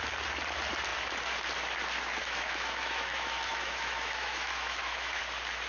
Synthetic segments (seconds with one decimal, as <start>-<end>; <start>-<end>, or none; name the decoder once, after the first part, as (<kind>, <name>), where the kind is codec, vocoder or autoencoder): 2.2-5.2 (autoencoder, DAC-VAE)